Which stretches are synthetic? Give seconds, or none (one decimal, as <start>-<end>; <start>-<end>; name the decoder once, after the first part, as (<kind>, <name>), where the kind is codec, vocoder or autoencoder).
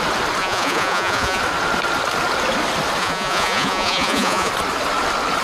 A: 0.4-1.4 (vocoder, Vocos); 3.0-4.5